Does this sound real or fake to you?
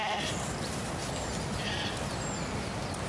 real